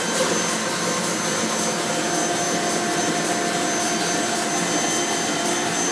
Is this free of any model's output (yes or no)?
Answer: yes